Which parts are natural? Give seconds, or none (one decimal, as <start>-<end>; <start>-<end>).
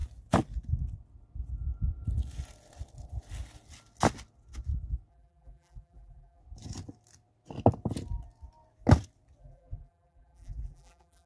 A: 0.0-5.1; 6.4-9.4